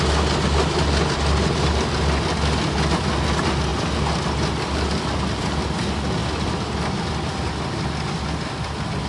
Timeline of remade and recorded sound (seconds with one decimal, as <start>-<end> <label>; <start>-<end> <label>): 0.0-9.1 recorded